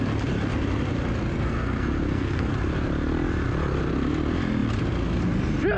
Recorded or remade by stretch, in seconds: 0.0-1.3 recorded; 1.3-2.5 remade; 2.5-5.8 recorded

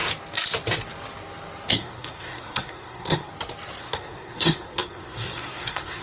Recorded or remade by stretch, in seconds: 0.0-1.7 recorded; 1.7-3.3 remade; 3.3-3.8 recorded; 3.8-6.0 remade

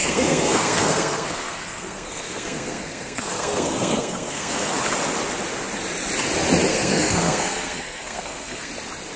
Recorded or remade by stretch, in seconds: 0.0-4.7 remade; 4.7-6.7 recorded; 6.7-8.7 remade; 8.7-9.2 recorded

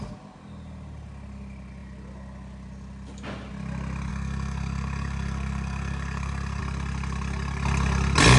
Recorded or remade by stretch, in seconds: 0.0-4.1 recorded; 4.1-6.6 remade; 6.6-8.4 recorded